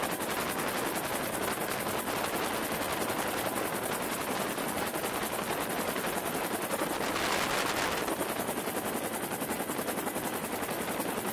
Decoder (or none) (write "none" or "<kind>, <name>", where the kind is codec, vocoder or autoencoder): none